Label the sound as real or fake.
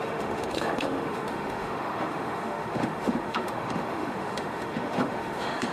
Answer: fake